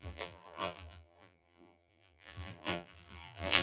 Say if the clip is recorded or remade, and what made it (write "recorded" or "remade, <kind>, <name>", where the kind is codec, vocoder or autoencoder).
remade, vocoder, BigVGAN v2